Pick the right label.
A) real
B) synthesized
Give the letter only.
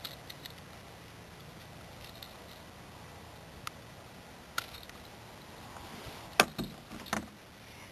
A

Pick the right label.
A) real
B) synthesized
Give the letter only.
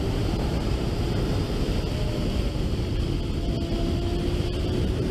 A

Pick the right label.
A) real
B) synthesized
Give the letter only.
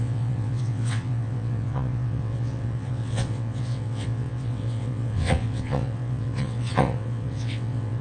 B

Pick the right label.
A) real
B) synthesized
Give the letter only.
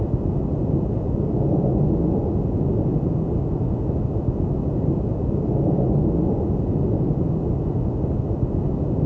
A